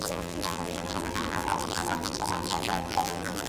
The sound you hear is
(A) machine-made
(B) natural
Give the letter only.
A